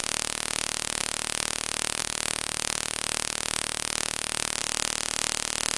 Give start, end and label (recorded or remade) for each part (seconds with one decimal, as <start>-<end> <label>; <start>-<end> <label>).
0.0-5.8 recorded